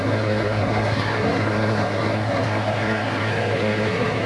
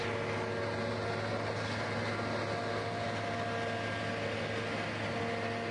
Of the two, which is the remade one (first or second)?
first